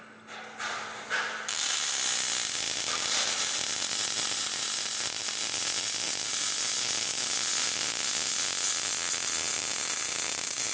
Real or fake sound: real